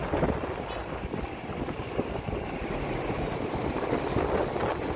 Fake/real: real